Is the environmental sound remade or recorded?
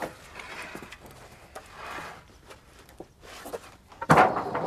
recorded